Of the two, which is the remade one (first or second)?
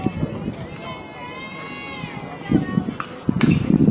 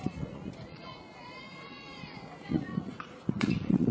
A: second